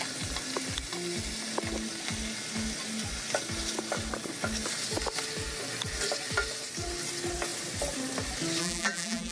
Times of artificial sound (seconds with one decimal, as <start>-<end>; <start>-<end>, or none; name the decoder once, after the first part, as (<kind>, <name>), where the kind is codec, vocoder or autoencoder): 8.6-9.3 (vocoder, BigVGAN v2)